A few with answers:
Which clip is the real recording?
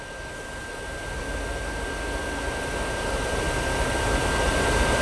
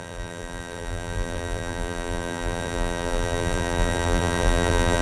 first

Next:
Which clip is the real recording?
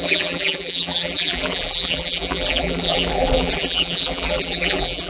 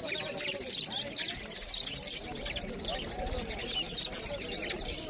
second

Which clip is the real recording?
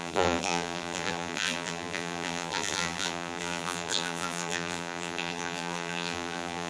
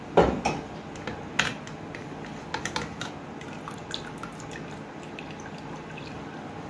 second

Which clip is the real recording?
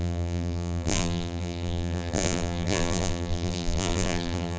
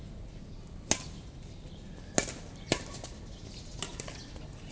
second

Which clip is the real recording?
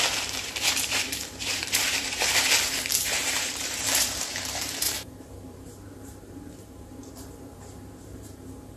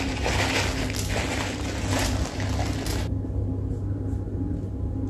second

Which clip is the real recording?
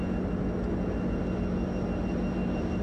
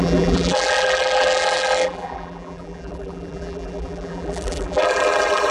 first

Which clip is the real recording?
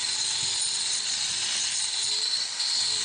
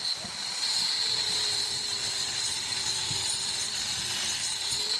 first